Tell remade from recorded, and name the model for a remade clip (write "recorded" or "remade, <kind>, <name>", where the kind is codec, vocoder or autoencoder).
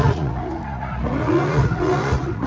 remade, vocoder, Vocos